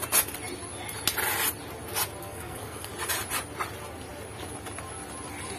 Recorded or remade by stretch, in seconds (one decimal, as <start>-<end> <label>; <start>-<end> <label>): 0.0-2.2 recorded; 2.2-2.9 remade; 2.9-5.6 recorded